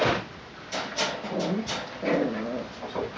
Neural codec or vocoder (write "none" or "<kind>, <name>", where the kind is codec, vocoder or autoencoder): none